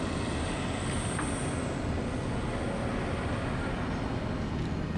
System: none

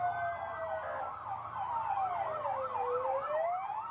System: none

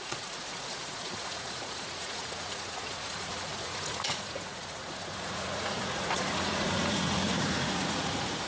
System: vocoder, Vocos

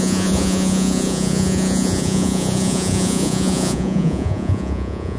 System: vocoder, Vocos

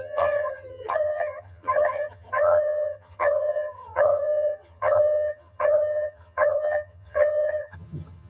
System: vocoder, HiFi-GAN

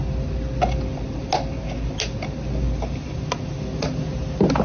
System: none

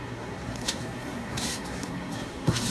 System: codec, SNAC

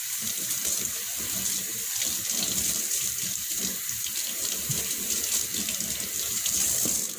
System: vocoder, BigVGAN v2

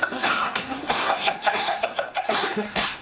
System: codec, SNAC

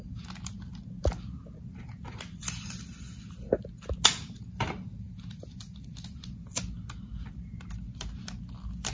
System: none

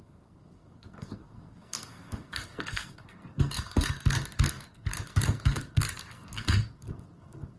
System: codec, SNAC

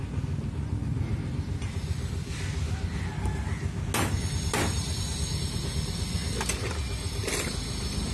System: none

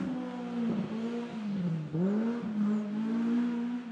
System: none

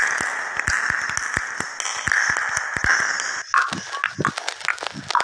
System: none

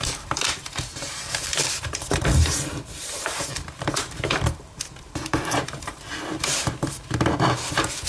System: vocoder, BigVGAN v2